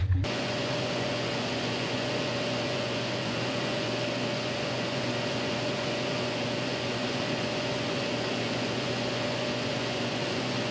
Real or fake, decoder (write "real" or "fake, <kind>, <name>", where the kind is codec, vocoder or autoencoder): fake, vocoder, Vocos